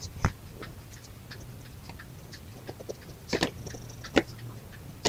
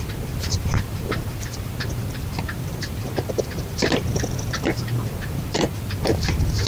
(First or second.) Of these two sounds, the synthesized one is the second